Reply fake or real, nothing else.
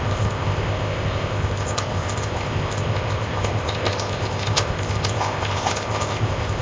fake